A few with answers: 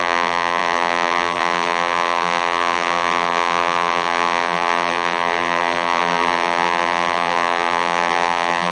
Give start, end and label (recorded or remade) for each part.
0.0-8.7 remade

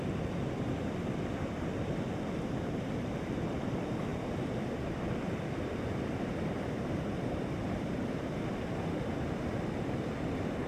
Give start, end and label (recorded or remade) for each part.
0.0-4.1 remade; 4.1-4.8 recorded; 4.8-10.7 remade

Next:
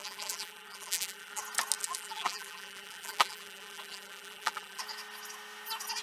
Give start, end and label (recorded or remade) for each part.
0.0-1.4 remade; 1.4-1.8 recorded; 1.8-4.8 remade; 4.8-6.0 recorded

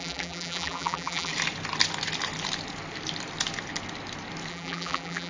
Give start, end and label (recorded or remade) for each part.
0.0-1.3 remade; 1.3-4.5 recorded; 4.5-5.3 remade

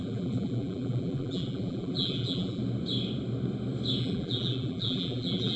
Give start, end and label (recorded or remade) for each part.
0.0-2.6 remade; 2.6-4.0 recorded; 4.0-5.6 remade

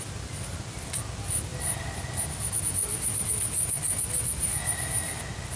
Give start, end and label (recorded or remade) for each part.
0.0-2.8 recorded; 2.8-3.3 remade; 3.3-5.6 recorded

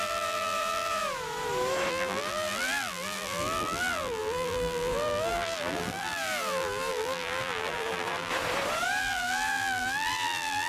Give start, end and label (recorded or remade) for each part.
0.0-1.0 remade; 1.0-1.9 recorded; 1.9-8.3 remade; 8.3-9.0 recorded; 9.0-10.7 remade

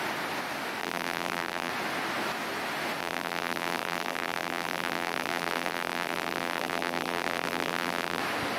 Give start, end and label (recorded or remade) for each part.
0.0-0.8 recorded; 0.8-1.7 remade; 1.7-3.0 recorded; 3.0-8.2 remade; 8.2-8.6 recorded